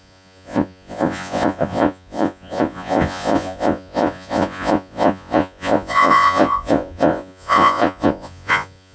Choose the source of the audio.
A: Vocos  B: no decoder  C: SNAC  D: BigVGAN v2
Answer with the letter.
A